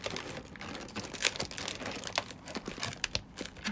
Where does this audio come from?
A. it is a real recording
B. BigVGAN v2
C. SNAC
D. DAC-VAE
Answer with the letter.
A